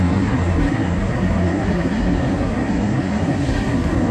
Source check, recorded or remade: remade